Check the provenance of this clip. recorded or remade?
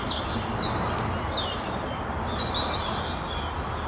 recorded